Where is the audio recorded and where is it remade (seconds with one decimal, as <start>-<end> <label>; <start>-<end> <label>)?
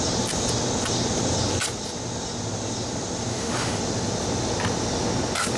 0.0-3.3 recorded; 3.3-3.8 remade; 3.8-5.6 recorded